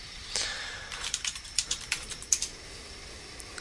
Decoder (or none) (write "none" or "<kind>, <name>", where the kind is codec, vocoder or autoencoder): vocoder, BigVGAN v2